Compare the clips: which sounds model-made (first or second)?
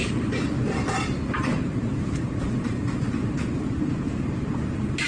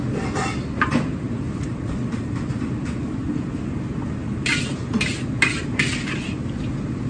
first